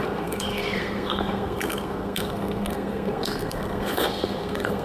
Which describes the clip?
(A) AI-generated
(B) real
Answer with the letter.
A